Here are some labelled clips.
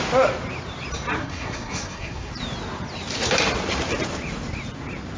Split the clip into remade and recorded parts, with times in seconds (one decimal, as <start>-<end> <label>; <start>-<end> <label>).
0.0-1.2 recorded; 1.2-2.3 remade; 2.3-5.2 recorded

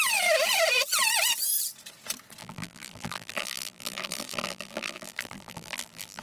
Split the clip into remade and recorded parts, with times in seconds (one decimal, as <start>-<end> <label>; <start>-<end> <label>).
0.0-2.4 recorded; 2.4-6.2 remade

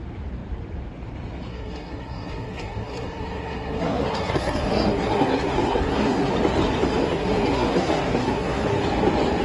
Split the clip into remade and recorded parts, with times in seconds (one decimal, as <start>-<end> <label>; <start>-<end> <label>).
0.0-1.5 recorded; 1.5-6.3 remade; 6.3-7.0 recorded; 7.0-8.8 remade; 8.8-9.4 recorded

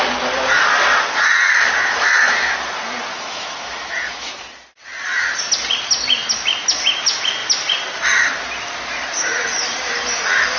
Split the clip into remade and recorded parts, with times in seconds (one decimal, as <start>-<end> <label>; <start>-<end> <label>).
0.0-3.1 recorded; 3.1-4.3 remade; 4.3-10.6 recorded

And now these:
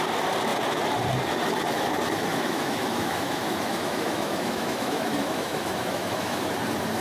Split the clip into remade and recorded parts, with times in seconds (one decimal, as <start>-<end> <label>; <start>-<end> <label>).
0.0-2.3 recorded; 2.3-6.5 remade; 6.5-7.0 recorded

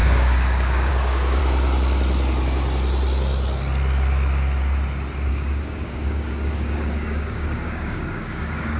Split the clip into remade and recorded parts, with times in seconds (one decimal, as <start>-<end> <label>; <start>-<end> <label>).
0.0-1.4 remade; 1.4-5.3 recorded; 5.3-8.8 remade

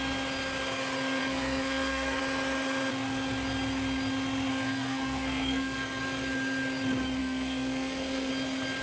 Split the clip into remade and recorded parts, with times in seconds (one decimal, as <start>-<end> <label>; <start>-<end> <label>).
0.0-1.2 recorded; 1.2-2.2 remade; 2.2-4.5 recorded; 4.5-6.0 remade; 6.0-7.2 recorded; 7.2-8.3 remade; 8.3-8.8 recorded